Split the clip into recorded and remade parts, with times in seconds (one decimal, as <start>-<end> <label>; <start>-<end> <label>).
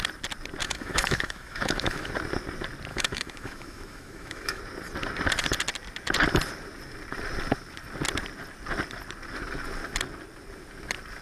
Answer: 0.0-0.6 recorded; 0.6-2.1 remade; 2.1-2.9 recorded; 2.9-4.6 remade; 4.6-11.2 recorded